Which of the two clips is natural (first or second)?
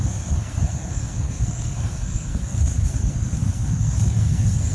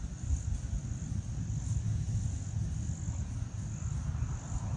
second